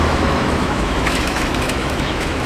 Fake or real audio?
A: fake